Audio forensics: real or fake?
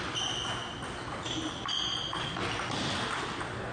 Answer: real